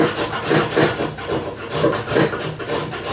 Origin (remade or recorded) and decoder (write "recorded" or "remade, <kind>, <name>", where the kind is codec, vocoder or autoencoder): recorded